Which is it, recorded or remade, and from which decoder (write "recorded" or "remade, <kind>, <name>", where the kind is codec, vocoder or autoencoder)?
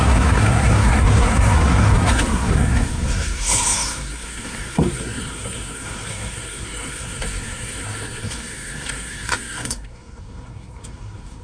remade, codec, SNAC